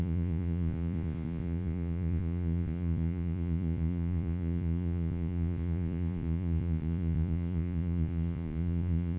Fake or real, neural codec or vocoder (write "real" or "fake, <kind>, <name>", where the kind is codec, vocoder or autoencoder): fake, vocoder, Vocos